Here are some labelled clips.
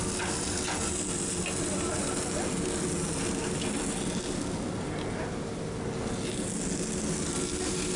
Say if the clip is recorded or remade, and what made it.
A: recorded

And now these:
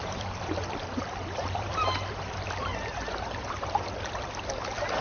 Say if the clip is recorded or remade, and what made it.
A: remade, vocoder, BigVGAN v2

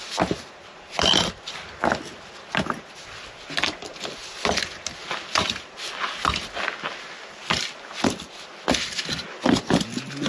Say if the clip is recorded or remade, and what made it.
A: recorded